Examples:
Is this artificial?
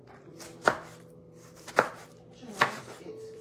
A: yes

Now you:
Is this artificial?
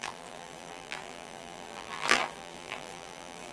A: yes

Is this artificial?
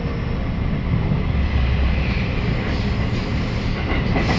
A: no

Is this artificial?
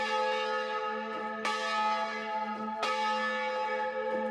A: no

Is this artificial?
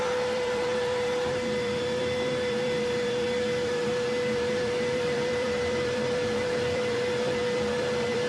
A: yes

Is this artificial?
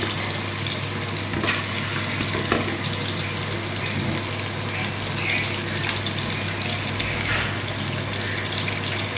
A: no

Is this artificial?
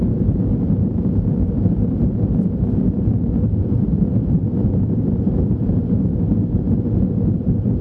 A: no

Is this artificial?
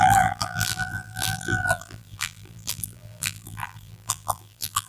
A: yes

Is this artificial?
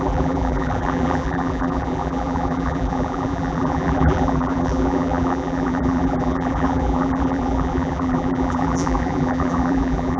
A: yes